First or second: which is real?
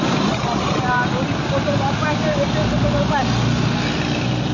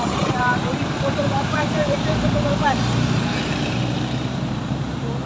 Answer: first